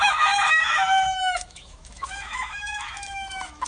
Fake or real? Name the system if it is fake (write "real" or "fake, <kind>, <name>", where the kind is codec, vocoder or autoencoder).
fake, autoencoder, DAC-VAE